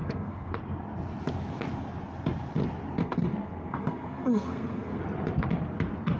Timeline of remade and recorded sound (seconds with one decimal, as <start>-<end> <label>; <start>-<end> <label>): 0.0-0.5 remade; 0.5-3.0 recorded; 3.0-5.0 remade; 5.0-6.2 recorded